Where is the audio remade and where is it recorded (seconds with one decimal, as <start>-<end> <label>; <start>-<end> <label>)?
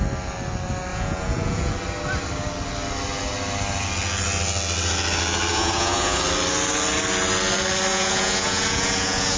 0.0-0.9 recorded; 0.9-1.7 remade; 1.7-5.5 recorded; 5.5-6.2 remade; 6.2-7.9 recorded; 7.9-9.4 remade